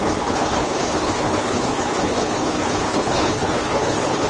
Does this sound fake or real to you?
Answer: fake